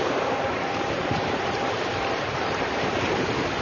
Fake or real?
fake